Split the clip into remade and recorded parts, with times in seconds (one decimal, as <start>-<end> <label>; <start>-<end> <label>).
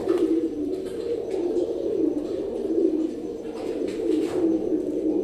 0.0-3.1 remade; 3.1-3.9 recorded; 3.9-4.4 remade; 4.4-5.2 recorded